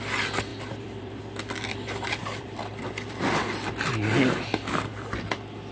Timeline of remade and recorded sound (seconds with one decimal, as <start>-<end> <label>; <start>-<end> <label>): 0.0-0.5 recorded; 0.5-1.2 remade; 1.2-2.2 recorded; 2.2-3.4 remade; 3.4-5.7 recorded